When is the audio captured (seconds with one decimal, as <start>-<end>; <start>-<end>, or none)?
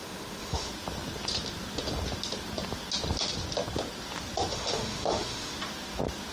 0.7-4.5; 5.5-6.3